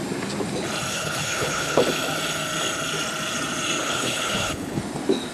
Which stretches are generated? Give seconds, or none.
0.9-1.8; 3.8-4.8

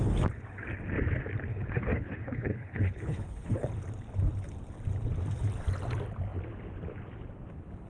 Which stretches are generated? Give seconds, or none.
1.5-3.7

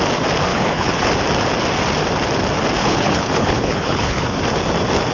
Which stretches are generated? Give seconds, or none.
0.5-1.1; 2.8-4.4

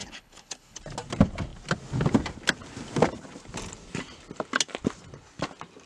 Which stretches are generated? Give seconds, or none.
0.0-0.8

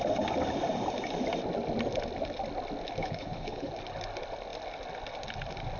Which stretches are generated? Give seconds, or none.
3.0-3.7